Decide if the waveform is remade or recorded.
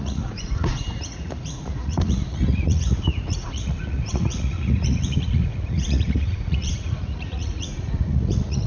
remade